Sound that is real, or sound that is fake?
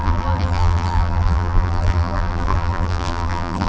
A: fake